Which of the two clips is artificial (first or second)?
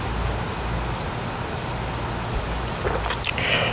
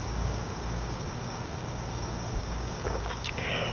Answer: second